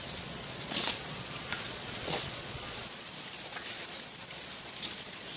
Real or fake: fake